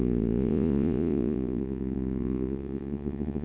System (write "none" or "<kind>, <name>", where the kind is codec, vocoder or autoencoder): vocoder, Vocos